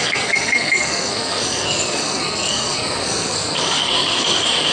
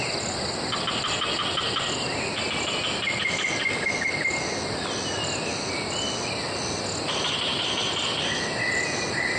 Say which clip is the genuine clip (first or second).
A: second